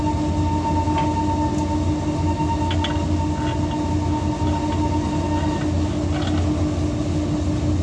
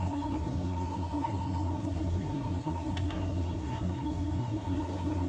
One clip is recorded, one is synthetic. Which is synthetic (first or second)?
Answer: second